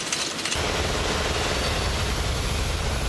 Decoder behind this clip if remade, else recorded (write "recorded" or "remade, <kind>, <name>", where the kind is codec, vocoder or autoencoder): recorded